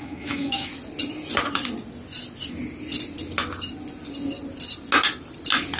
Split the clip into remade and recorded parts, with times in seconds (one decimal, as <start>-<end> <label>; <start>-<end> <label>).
0.0-0.7 remade; 0.7-5.8 recorded

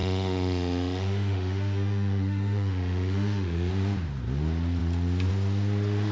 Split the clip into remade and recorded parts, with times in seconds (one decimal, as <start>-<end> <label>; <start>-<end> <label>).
0.0-3.7 remade; 3.7-6.1 recorded

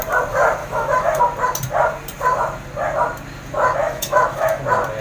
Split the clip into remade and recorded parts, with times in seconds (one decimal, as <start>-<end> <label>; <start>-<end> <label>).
0.0-0.6 recorded; 0.6-1.2 remade; 1.2-3.8 recorded; 3.8-4.6 remade; 4.6-5.0 recorded

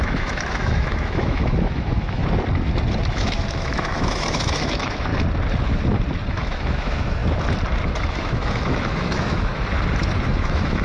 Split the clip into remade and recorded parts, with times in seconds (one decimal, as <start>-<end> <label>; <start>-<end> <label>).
0.0-2.2 remade; 2.2-3.1 recorded; 3.1-5.1 remade; 5.1-6.3 recorded; 6.3-7.2 remade; 7.2-8.1 recorded; 8.1-9.5 remade; 9.5-10.3 recorded; 10.3-10.8 remade

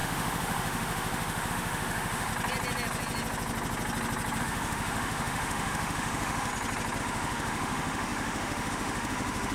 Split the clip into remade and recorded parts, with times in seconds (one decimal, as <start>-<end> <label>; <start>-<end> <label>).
0.0-2.3 remade; 2.3-4.4 recorded; 4.4-6.5 remade; 6.5-7.0 recorded; 7.0-9.5 remade

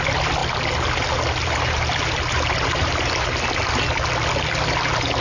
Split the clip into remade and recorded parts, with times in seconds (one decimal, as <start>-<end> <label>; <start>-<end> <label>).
0.0-5.2 recorded

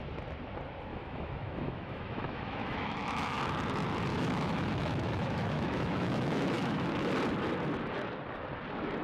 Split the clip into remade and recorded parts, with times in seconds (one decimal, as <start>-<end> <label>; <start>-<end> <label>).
0.0-0.9 recorded; 0.9-3.4 remade; 3.4-4.1 recorded; 4.1-7.1 remade; 7.1-9.0 recorded